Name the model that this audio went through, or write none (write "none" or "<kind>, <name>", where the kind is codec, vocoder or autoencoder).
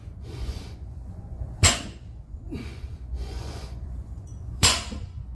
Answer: vocoder, Vocos